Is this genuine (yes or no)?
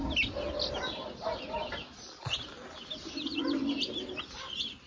yes